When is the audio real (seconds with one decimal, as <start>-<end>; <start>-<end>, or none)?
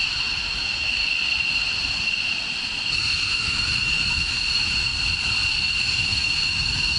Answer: 0.0-0.6; 1.0-3.3; 4.9-5.7